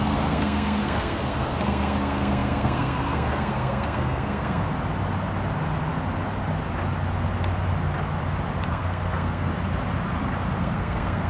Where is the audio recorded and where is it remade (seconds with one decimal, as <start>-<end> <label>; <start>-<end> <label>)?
0.0-4.7 remade; 4.7-8.7 recorded; 8.7-9.5 remade; 9.5-10.6 recorded; 10.6-11.3 remade